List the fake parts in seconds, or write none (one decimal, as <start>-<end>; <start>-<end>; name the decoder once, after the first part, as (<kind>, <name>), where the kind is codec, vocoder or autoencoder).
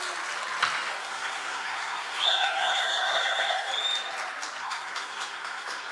1.0-3.7 (codec, SNAC); 4.6-5.9